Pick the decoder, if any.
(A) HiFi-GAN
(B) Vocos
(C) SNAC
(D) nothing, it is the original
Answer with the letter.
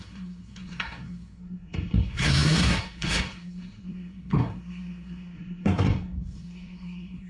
C